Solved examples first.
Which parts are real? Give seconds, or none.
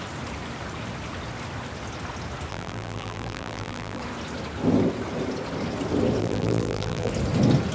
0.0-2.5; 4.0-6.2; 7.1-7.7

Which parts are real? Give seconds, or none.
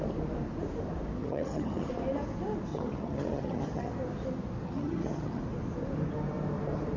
0.0-1.2; 1.9-2.7; 3.9-4.6; 5.4-7.0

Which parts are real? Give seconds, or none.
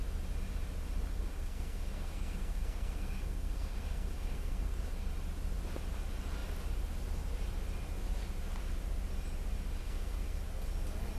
0.0-1.1; 5.1-9.8; 10.4-11.2